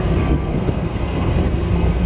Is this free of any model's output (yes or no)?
no